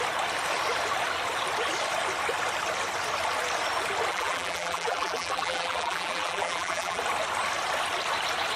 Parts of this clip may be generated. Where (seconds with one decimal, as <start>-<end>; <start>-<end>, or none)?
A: 4.1-7.0

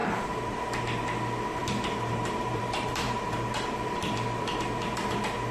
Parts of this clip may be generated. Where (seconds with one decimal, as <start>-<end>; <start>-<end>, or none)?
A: 0.0-0.6; 1.6-4.0

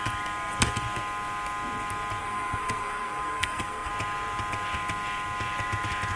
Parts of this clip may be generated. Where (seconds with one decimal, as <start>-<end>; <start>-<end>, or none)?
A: 2.2-3.9

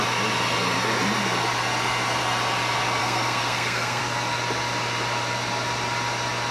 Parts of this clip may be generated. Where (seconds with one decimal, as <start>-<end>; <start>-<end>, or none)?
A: 3.0-4.0

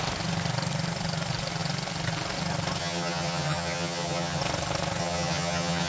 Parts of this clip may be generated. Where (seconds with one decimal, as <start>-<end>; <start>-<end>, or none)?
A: 2.8-4.4; 5.0-5.9

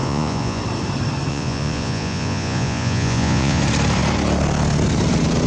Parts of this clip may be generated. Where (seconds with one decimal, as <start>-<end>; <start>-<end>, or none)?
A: 0.0-0.6; 1.3-3.6

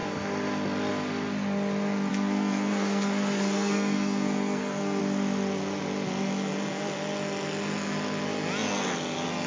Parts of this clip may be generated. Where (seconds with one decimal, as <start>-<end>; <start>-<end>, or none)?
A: 2.1-5.0